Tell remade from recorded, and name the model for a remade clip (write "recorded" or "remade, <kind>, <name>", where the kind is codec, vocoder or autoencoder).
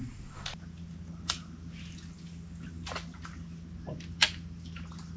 recorded